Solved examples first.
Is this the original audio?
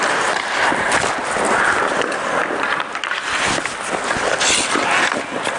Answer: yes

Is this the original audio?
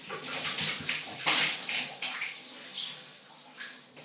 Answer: yes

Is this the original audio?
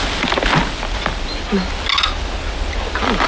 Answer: yes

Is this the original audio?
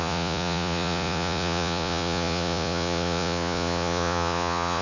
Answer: no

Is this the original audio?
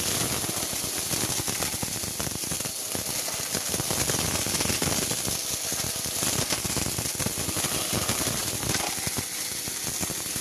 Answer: yes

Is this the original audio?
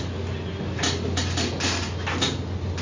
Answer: yes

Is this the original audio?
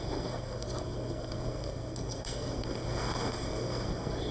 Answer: no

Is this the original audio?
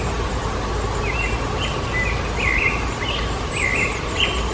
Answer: yes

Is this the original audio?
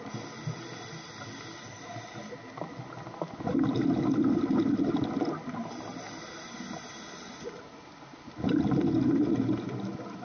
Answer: yes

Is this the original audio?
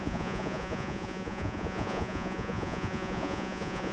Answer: no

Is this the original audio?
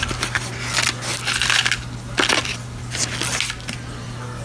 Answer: yes